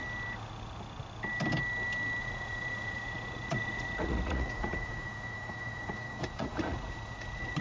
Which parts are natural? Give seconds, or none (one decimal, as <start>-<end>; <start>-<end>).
0.0-2.2